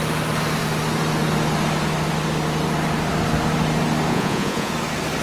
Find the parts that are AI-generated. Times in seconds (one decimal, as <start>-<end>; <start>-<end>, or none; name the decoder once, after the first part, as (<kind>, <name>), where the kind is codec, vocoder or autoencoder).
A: 4.1-4.7 (vocoder, Vocos)